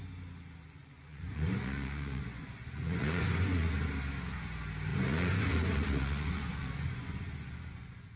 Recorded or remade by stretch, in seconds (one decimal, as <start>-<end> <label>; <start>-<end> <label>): 0.0-0.8 recorded; 0.8-3.7 remade; 3.7-4.9 recorded; 4.9-8.2 remade